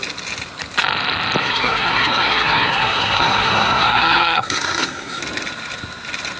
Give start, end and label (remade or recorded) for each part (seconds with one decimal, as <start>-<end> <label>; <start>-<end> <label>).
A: 0.0-1.4 recorded; 1.4-5.2 remade; 5.2-6.4 recorded